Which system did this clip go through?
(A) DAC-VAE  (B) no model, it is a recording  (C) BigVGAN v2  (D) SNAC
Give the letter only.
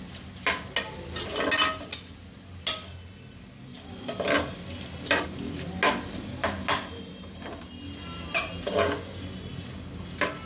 B